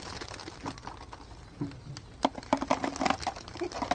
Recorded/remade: recorded